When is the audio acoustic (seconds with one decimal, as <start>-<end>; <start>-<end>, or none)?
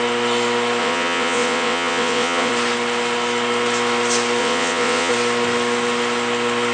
0.0-0.8; 2.5-4.4; 5.1-6.7